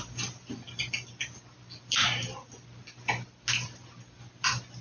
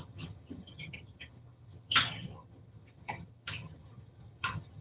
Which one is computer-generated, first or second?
second